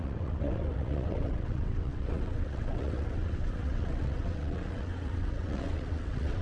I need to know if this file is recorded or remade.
remade